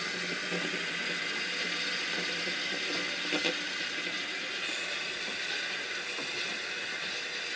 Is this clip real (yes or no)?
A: yes